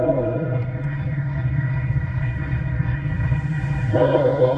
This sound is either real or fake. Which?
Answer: fake